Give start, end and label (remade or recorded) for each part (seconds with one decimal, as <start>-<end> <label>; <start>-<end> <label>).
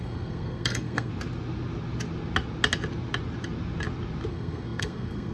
0.0-1.1 remade; 1.1-4.3 recorded; 4.3-5.3 remade